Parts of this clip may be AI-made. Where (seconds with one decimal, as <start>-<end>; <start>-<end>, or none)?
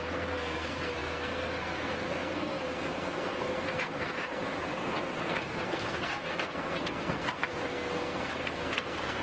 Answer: 0.0-9.2